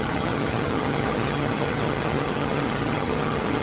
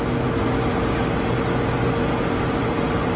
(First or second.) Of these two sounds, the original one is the second